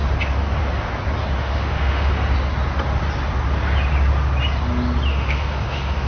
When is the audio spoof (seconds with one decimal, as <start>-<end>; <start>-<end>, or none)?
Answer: 1.4-2.1; 5.1-6.1